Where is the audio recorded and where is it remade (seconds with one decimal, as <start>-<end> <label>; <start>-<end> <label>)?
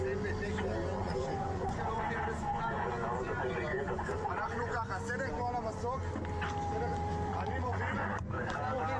0.0-0.9 recorded; 0.9-4.8 remade; 4.8-7.3 recorded; 7.3-8.4 remade; 8.4-9.0 recorded